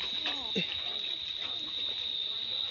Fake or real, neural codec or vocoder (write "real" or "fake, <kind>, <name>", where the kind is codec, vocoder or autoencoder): real